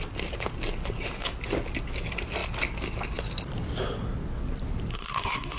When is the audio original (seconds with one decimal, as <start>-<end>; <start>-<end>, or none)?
0.0-4.9

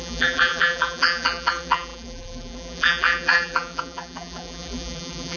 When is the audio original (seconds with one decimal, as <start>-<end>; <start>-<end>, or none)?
none

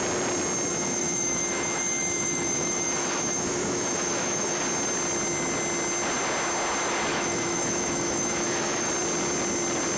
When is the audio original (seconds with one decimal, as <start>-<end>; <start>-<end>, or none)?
0.0-0.7; 4.6-7.1; 8.9-10.0

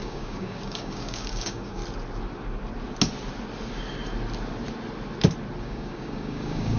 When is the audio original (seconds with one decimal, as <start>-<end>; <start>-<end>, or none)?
1.8-5.6

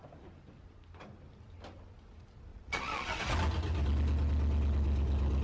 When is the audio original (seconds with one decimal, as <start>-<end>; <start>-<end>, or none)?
0.0-2.5; 3.2-5.4

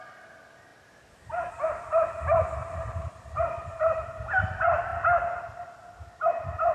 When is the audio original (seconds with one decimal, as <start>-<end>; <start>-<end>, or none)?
0.0-2.6; 4.3-6.7

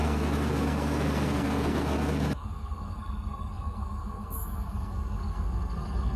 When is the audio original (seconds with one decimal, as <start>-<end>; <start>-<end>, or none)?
none

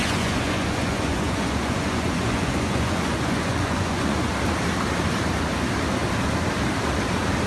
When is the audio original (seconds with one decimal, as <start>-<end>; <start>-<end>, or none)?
4.3-7.5